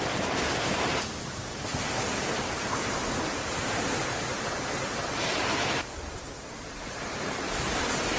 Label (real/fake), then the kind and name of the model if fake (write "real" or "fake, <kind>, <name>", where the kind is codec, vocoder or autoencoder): fake, vocoder, BigVGAN v2